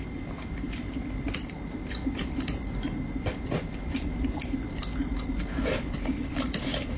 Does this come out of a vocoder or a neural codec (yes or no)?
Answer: no